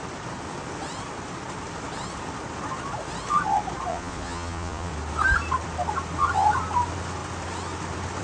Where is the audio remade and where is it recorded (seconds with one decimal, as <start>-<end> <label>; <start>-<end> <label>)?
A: 0.0-3.9 recorded; 3.9-4.9 remade; 4.9-8.2 recorded